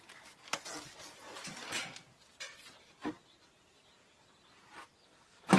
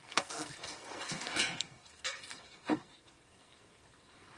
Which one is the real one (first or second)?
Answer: first